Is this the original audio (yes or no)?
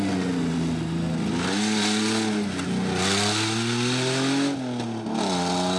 yes